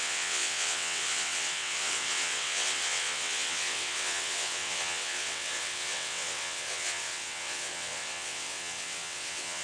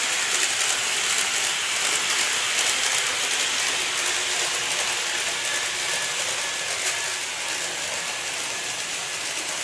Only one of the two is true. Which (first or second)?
second